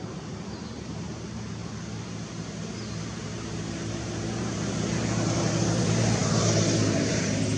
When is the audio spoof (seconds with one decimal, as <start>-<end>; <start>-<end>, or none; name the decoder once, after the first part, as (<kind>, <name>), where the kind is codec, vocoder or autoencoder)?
0.0-1.6 (vocoder, BigVGAN v2); 3.6-7.6